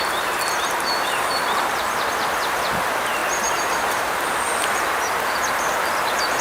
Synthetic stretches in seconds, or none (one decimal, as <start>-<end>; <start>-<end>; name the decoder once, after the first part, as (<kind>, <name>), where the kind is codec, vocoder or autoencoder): 0.0-6.4 (vocoder, BigVGAN v2)